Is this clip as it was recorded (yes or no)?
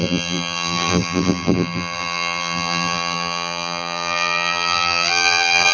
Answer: no